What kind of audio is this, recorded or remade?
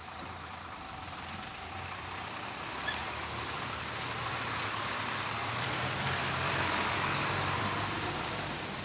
remade